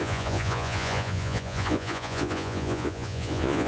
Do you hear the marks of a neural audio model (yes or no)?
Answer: yes